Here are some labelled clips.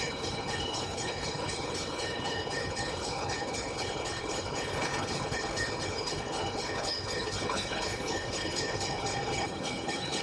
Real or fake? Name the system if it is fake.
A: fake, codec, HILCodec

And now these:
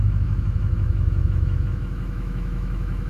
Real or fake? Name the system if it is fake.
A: fake, autoencoder, DAC-VAE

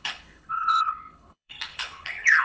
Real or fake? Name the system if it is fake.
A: fake, codec, HILCodec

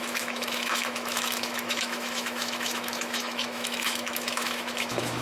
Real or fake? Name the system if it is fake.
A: fake, autoencoder, DAC-VAE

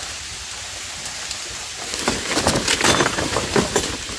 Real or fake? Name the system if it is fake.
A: real